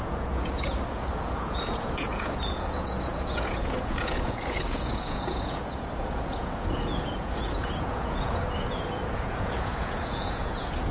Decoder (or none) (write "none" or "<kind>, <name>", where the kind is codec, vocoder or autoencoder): vocoder, Vocos